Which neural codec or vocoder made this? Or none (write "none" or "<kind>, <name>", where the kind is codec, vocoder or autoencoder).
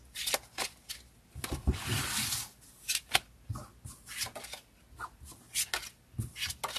none